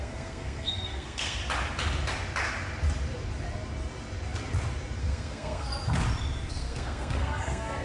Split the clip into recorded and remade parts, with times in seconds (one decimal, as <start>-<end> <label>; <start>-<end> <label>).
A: 0.0-1.4 remade; 1.4-5.0 recorded; 5.0-5.7 remade; 5.7-6.5 recorded; 6.5-7.8 remade